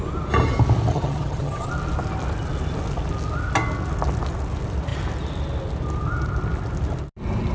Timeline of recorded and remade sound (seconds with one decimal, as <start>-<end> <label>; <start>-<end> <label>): 0.0-0.9 recorded; 0.9-1.7 remade; 1.7-7.5 recorded